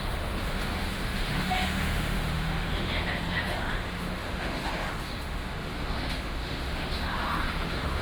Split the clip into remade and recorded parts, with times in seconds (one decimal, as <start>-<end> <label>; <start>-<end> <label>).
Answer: 0.0-8.0 remade